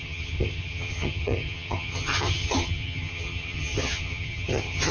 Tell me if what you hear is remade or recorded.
remade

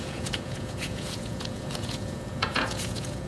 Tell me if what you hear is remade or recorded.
remade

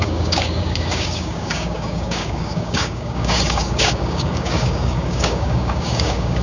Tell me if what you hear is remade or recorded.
remade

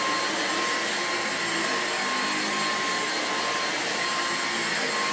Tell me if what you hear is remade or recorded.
recorded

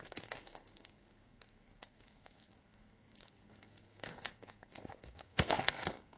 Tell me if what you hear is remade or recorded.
remade